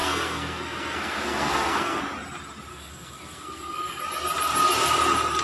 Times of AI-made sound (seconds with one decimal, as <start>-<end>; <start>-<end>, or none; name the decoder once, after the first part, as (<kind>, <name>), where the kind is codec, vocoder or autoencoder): 0.0-2.0 (codec, SNAC); 2.7-4.0